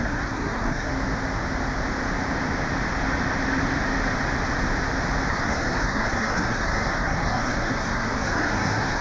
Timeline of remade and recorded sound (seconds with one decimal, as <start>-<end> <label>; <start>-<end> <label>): 0.0-0.9 remade; 0.9-5.3 recorded; 5.3-9.0 remade